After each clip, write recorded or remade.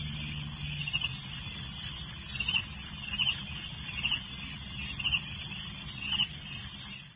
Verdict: recorded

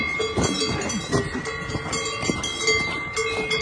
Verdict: recorded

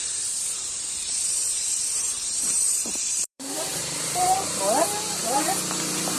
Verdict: remade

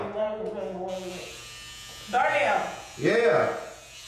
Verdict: remade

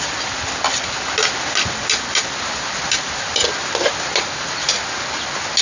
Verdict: recorded